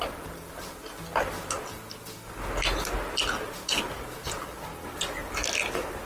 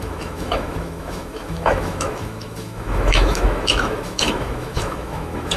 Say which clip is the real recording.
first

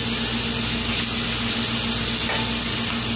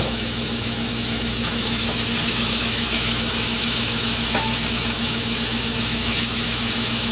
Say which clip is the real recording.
first